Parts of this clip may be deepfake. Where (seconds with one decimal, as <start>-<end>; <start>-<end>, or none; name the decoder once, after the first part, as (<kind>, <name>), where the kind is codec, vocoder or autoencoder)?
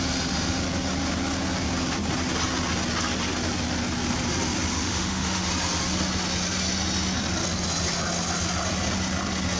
4.7-5.5 (autoencoder, DAC-VAE)